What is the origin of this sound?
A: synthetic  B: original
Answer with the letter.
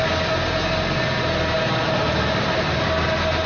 B